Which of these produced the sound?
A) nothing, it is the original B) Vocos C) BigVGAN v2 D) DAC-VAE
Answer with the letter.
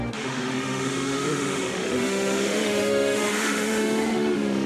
D